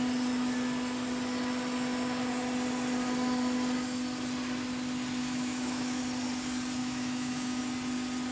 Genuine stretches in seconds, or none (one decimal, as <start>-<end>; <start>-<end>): 0.0-5.2; 6.0-6.8; 7.6-8.3